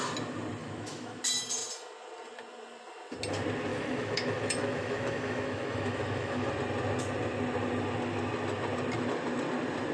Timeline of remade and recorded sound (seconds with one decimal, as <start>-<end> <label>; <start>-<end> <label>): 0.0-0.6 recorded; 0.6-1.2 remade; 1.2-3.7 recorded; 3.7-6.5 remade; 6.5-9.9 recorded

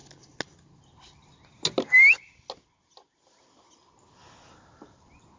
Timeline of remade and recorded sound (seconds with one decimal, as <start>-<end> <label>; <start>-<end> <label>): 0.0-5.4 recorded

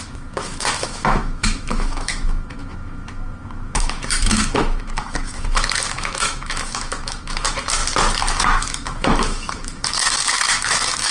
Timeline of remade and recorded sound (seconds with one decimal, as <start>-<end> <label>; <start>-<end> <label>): 0.0-7.8 remade; 7.8-8.4 recorded; 8.4-11.1 remade

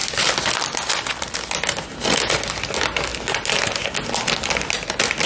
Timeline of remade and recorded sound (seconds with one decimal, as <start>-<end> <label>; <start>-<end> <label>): 0.0-5.3 recorded

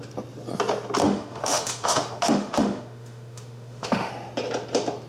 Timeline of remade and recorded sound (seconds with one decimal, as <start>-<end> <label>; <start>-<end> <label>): 0.0-1.0 recorded; 1.0-4.1 remade; 4.1-5.1 recorded